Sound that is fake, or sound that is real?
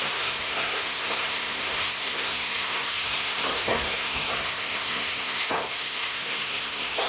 fake